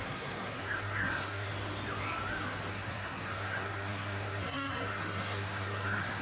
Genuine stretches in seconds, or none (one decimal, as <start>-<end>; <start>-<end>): 1.5-2.7